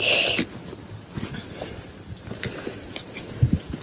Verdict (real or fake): real